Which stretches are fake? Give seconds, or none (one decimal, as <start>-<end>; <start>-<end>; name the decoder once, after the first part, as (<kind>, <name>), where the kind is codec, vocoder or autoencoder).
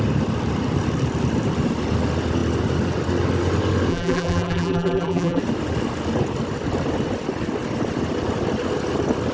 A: 3.9-5.4 (vocoder, BigVGAN v2)